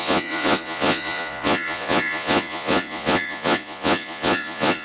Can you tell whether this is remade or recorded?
remade